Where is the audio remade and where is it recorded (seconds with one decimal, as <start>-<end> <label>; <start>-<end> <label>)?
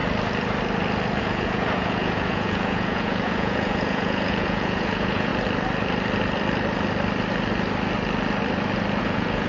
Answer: 0.0-1.2 recorded; 1.2-5.3 remade; 5.3-9.0 recorded; 9.0-9.5 remade